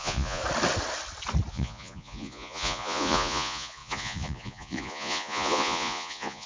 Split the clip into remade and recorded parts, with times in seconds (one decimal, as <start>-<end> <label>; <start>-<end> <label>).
0.0-0.4 remade; 0.4-1.5 recorded; 1.5-6.5 remade